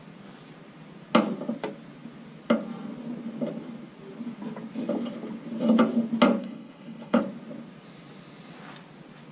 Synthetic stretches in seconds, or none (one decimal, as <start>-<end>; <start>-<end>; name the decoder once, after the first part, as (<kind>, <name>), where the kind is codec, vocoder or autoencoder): 6.4-7.2 (codec, HILCodec)